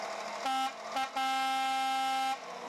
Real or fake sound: real